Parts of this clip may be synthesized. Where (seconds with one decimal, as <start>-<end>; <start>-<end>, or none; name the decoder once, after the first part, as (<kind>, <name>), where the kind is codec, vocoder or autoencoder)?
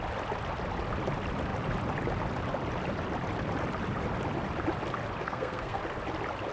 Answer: 5.2-5.8 (codec, SNAC)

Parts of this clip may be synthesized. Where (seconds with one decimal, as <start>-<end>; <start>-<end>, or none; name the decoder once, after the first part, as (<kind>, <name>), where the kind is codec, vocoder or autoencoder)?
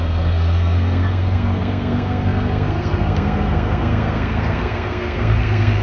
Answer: 0.0-5.8 (codec, SNAC)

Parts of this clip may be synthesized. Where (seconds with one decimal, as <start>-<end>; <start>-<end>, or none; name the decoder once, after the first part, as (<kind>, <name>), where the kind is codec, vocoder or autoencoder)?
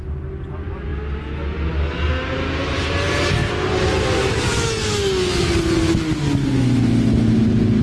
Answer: none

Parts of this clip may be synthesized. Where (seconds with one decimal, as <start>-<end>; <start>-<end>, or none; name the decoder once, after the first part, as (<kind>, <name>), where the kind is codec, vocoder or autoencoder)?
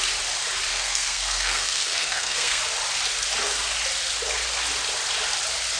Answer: 0.7-2.6 (codec, SNAC)